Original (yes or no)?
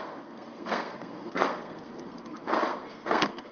no